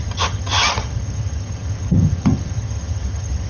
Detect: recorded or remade remade